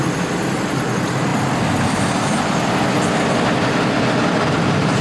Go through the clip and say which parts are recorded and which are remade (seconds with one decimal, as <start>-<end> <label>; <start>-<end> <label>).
0.0-5.0 recorded